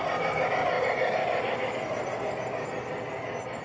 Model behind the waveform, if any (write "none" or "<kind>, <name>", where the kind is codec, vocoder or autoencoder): none